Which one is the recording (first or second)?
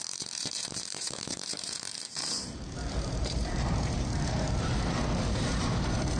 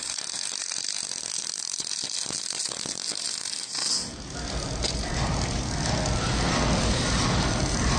second